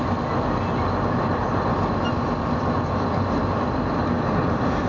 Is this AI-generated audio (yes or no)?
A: no